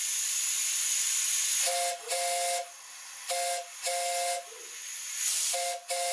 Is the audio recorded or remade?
recorded